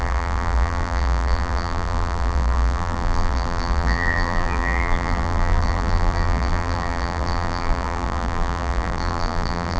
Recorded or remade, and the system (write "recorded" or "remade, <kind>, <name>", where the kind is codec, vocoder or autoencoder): remade, vocoder, BigVGAN v2